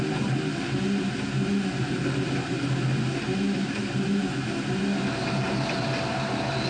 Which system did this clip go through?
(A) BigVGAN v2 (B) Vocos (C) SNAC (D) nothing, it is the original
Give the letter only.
D